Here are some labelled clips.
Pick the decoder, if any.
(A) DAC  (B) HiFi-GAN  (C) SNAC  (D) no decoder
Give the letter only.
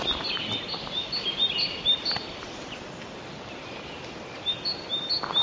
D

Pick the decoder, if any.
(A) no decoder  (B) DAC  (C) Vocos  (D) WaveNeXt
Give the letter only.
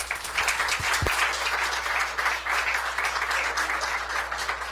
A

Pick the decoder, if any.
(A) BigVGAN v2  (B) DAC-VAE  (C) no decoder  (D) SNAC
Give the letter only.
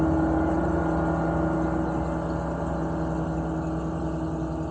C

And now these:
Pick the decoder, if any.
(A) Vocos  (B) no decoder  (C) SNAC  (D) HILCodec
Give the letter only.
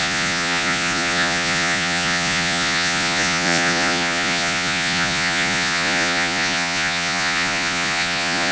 A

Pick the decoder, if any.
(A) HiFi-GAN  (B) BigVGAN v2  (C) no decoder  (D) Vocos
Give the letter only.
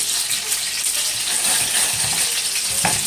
C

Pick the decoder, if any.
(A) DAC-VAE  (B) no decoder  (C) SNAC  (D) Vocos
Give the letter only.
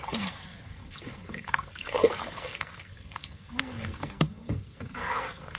C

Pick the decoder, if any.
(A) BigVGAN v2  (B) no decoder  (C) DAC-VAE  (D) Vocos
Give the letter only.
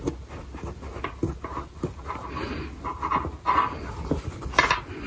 B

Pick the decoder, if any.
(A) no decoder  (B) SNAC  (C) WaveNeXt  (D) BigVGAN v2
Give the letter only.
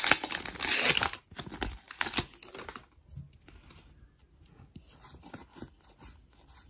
A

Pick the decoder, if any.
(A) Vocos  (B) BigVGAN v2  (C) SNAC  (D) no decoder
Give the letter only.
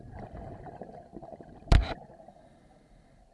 D